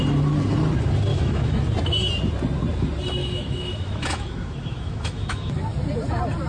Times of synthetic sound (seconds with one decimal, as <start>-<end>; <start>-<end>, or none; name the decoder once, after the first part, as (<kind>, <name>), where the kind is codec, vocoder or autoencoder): 1.1-1.6 (autoencoder, DAC-VAE); 3.2-5.5